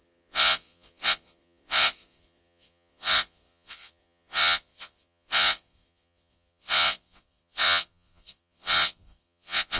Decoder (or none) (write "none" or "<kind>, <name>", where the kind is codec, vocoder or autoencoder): vocoder, Vocos